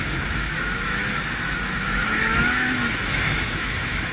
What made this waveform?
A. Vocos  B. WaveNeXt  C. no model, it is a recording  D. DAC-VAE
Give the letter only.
D